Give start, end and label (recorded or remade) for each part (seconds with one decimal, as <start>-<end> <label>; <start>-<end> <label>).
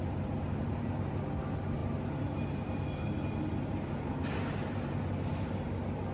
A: 0.0-6.1 recorded